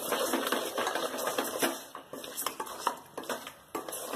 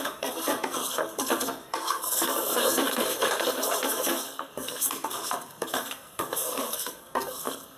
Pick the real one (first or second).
first